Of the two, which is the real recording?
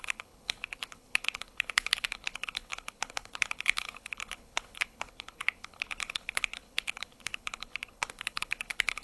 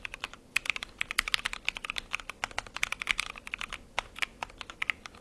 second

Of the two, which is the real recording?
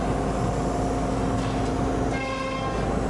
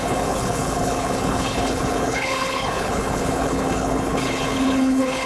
first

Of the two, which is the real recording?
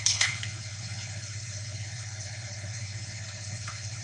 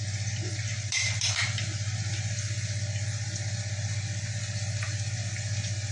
second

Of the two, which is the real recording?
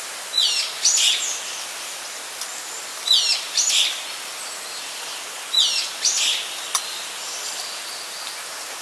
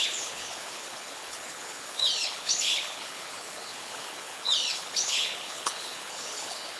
first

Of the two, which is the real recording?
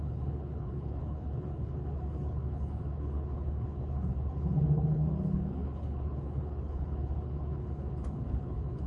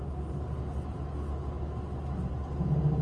second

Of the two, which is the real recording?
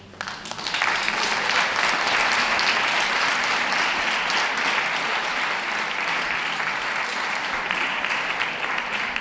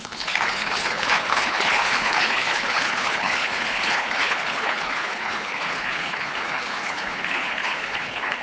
first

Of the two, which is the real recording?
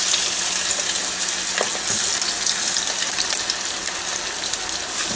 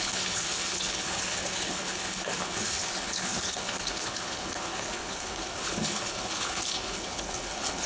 first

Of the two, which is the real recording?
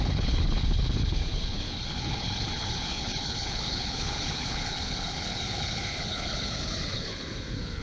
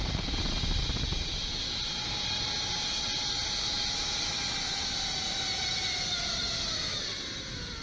second